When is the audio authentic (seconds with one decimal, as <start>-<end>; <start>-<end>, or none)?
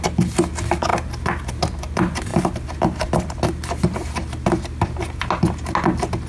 0.0-6.3